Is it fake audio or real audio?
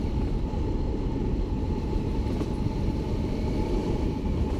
fake